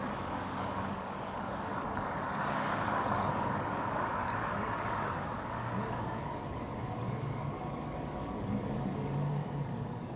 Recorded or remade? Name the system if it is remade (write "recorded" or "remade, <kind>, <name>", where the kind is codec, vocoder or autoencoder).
remade, codec, DAC